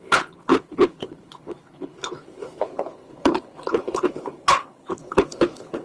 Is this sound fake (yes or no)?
yes